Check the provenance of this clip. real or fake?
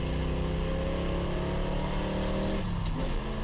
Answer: real